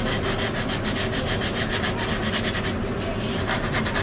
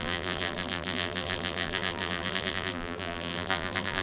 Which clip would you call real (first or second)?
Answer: first